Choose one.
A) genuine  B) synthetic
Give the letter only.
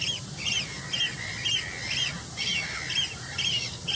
A